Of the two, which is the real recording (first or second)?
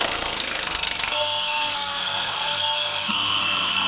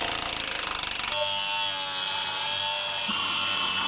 second